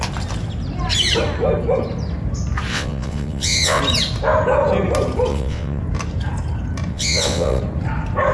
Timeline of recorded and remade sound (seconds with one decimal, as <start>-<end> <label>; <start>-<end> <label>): 0.0-2.7 recorded; 2.7-3.8 remade; 3.8-5.3 recorded; 5.3-5.8 remade; 5.8-6.9 recorded; 6.9-7.6 remade; 7.6-8.3 recorded